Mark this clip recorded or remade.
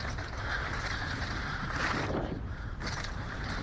remade